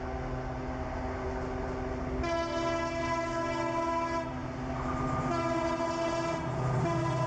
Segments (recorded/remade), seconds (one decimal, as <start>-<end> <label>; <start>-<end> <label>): 0.0-7.3 recorded